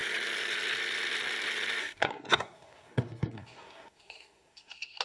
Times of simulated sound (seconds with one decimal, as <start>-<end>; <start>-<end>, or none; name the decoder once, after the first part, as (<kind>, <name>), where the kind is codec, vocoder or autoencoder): 1.8-5.0 (codec, SNAC)